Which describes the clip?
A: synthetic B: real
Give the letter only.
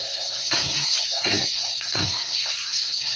A